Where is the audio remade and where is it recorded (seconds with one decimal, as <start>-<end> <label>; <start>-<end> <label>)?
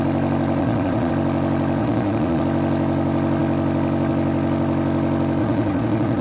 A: 0.0-0.6 recorded; 0.6-1.1 remade; 1.1-1.8 recorded; 1.8-2.4 remade; 2.4-5.4 recorded; 5.4-6.2 remade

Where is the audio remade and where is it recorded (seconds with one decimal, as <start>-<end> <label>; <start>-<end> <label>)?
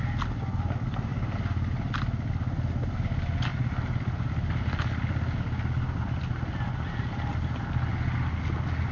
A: 0.0-8.9 recorded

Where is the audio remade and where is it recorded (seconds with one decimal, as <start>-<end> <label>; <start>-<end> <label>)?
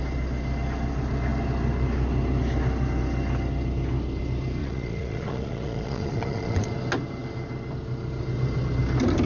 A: 0.0-4.6 recorded; 4.6-6.7 remade; 6.7-9.3 recorded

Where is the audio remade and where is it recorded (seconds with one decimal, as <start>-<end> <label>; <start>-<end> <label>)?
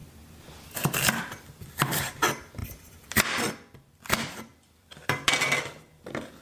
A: 0.0-6.4 recorded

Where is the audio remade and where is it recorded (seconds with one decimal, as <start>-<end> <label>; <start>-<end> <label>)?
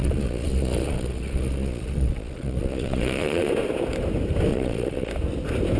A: 0.0-3.5 remade; 3.5-4.5 recorded; 4.5-5.1 remade; 5.1-5.8 recorded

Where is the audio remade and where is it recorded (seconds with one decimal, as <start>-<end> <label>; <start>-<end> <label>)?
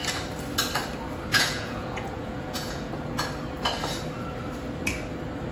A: 0.0-1.3 recorded; 1.3-2.9 remade; 2.9-5.5 recorded